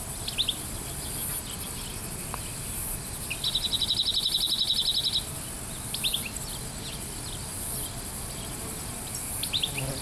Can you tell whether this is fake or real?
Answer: real